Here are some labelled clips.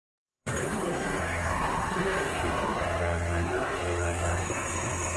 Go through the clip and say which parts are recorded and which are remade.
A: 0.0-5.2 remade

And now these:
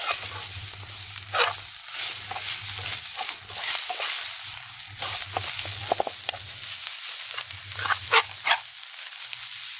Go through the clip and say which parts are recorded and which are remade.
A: 0.0-5.8 remade; 5.8-7.6 recorded; 7.6-9.8 remade

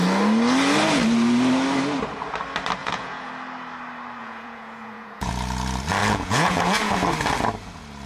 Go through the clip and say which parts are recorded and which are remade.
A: 0.0-2.8 recorded; 2.8-3.3 remade; 3.3-4.2 recorded; 4.2-5.3 remade; 5.3-6.0 recorded; 6.0-6.9 remade; 6.9-8.1 recorded

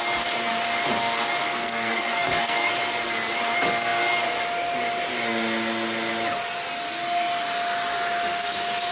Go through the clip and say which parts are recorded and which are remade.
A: 0.0-1.4 recorded; 1.4-2.7 remade; 2.7-8.9 recorded

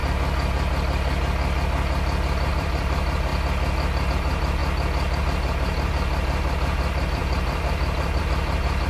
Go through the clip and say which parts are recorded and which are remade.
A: 0.0-2.5 recorded; 2.5-3.3 remade; 3.3-4.1 recorded; 4.1-4.6 remade; 4.6-5.2 recorded; 5.2-8.9 remade

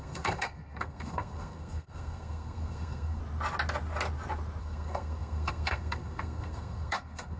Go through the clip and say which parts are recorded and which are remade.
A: 0.0-3.2 remade; 3.2-4.6 recorded; 4.6-7.4 remade

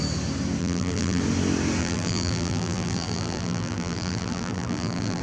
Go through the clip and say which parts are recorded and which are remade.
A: 0.0-0.6 recorded; 0.6-1.2 remade; 1.2-1.8 recorded; 1.8-5.2 remade

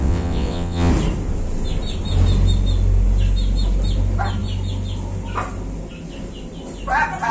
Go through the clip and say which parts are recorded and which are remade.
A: 0.0-0.9 remade; 0.9-7.3 recorded